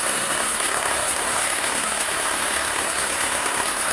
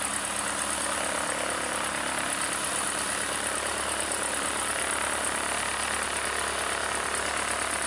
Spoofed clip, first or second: first